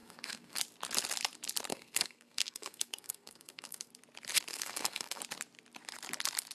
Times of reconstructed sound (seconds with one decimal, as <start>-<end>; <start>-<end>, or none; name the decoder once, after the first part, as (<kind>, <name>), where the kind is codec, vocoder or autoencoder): 0.0-0.6 (codec, SNAC); 1.7-3.9; 4.5-5.2